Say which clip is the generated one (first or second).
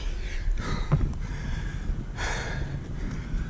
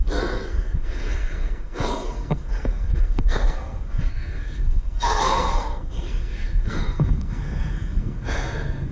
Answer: second